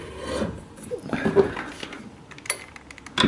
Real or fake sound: real